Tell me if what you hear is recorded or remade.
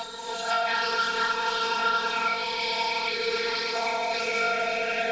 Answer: remade